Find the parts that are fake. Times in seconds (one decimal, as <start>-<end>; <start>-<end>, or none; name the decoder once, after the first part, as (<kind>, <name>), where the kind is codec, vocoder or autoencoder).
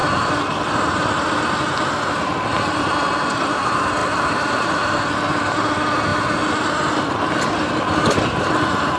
4.0-4.7 (vocoder, BigVGAN v2)